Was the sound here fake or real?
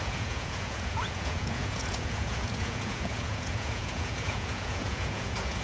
fake